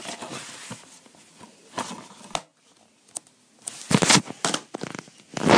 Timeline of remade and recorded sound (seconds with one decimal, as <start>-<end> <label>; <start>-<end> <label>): 0.0-5.6 recorded